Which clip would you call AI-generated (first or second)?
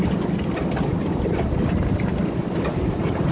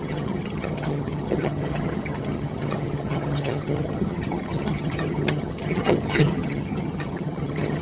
second